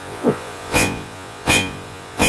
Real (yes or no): no